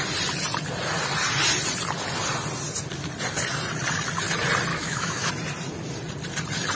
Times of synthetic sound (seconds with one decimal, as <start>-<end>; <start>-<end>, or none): 4.7-5.3